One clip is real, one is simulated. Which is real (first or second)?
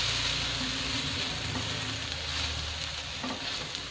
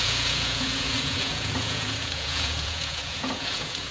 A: first